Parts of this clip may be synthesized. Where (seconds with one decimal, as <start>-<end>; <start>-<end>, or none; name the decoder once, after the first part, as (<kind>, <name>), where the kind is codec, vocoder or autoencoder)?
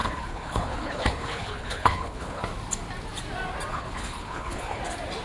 0.0-2.4 (codec, HILCodec); 3.7-4.8